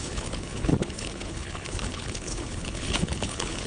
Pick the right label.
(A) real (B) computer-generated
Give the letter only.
B